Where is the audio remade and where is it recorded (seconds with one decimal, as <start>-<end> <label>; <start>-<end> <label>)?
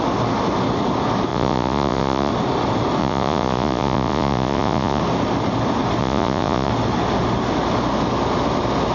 0.0-1.3 recorded; 1.3-2.3 remade; 2.3-3.0 recorded; 3.0-5.0 remade; 5.0-6.0 recorded; 6.0-6.7 remade; 6.7-8.9 recorded